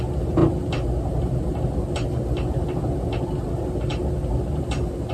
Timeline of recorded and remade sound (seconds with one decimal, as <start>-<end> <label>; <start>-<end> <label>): 0.0-5.1 recorded